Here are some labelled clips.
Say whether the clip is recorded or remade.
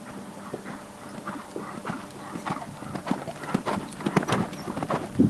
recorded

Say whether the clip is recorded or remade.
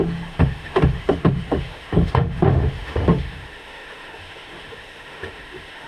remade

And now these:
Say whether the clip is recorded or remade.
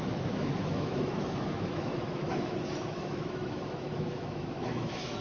remade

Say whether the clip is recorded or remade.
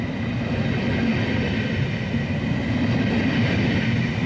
recorded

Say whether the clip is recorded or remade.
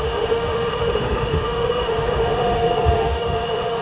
remade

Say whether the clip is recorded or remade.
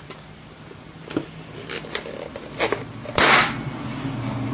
recorded